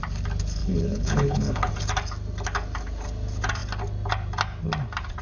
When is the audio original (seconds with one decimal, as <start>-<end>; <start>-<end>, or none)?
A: 0.0-0.6; 1.7-5.2